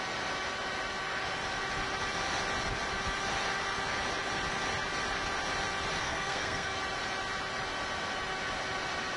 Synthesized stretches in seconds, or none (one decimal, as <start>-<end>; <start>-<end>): 6.0-6.8